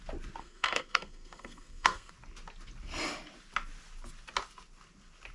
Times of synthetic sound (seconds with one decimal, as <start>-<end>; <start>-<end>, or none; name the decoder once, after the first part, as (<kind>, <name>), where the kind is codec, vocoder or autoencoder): 0.4-2.1 (codec, SNAC)